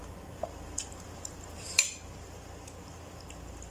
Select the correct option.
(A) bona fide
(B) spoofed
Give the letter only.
B